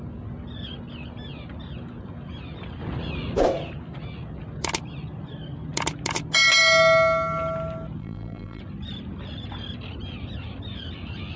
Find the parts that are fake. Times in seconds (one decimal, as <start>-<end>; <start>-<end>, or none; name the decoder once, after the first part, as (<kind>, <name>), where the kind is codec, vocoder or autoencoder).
8.0-8.6 (vocoder, BigVGAN v2)